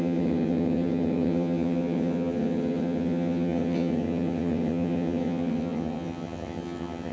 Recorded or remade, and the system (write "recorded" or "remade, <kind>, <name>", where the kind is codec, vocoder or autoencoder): remade, vocoder, HiFi-GAN